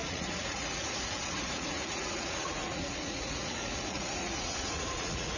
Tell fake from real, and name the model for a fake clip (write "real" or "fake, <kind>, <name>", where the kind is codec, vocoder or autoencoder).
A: fake, vocoder, Vocos